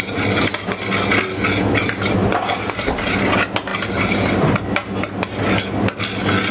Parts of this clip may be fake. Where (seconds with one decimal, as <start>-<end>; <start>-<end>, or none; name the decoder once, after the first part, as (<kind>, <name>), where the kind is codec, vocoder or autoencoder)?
none